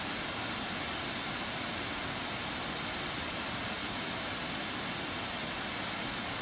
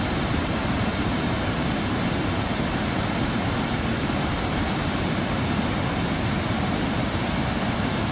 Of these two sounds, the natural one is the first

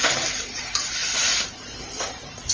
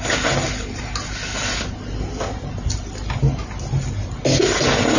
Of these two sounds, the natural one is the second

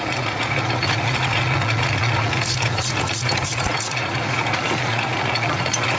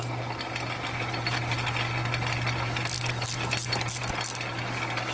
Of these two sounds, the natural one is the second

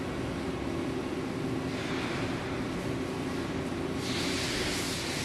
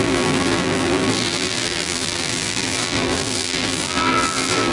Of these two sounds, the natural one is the first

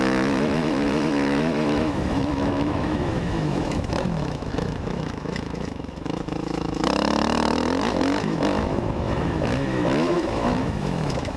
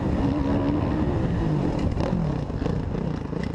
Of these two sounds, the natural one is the second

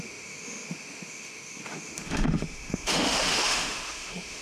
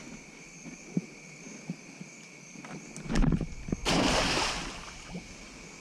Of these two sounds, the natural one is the second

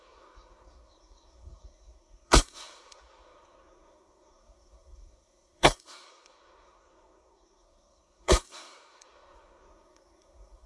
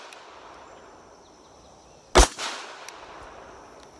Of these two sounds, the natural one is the second